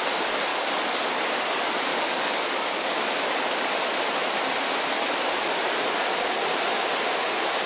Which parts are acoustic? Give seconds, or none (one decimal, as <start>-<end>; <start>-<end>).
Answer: 0.0-0.5; 1.0-1.9; 3.0-7.7